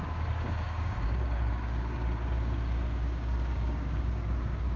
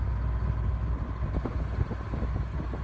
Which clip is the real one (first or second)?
second